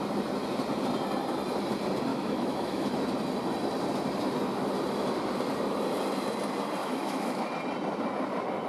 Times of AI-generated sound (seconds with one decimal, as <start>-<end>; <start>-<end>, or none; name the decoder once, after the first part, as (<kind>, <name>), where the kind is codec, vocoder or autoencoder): 2.1-2.9 (autoencoder, DAC-VAE); 6.8-7.5